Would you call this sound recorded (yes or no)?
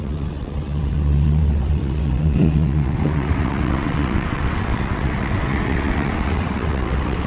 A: no